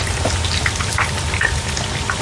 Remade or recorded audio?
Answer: recorded